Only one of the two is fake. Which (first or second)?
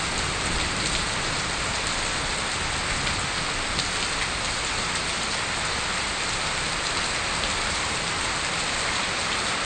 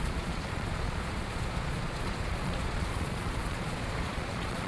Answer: second